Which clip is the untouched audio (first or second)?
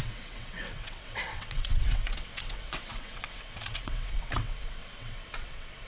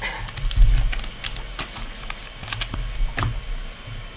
second